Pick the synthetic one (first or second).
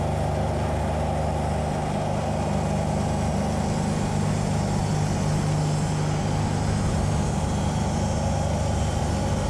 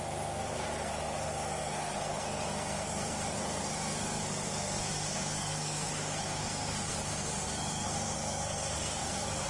second